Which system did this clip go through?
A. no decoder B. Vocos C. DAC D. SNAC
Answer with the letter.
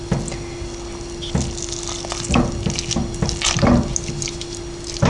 A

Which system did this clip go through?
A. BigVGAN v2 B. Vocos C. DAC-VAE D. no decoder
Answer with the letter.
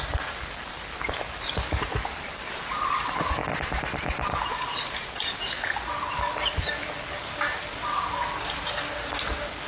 D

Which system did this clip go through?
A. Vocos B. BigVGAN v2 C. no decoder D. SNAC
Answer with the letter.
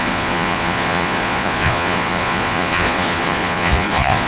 A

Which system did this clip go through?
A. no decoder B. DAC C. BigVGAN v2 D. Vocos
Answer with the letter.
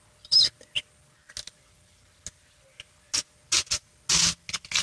A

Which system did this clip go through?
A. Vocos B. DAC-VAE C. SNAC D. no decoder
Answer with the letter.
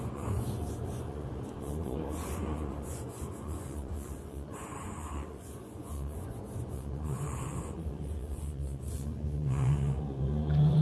A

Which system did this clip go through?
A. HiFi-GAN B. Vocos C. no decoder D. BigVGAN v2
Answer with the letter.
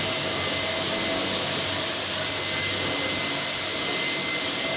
C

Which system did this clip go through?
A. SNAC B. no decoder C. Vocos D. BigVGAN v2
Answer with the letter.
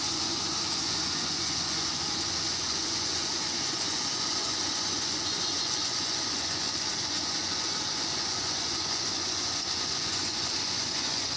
C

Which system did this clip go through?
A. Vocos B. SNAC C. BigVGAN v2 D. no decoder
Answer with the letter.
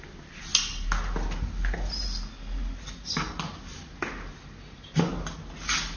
D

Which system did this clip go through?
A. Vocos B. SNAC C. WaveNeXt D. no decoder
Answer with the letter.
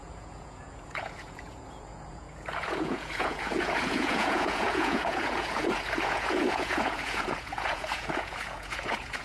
A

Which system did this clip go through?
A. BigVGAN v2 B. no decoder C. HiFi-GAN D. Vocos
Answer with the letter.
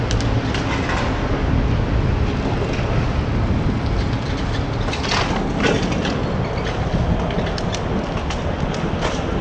B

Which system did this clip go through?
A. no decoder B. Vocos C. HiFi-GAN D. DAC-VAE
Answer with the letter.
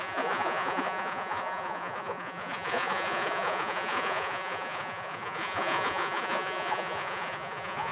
B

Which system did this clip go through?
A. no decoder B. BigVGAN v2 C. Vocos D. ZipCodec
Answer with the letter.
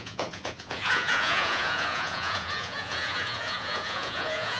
C